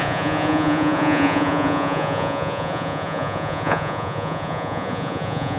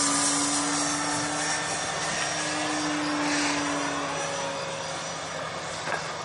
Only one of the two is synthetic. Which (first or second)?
first